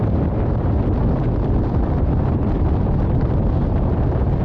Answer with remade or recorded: remade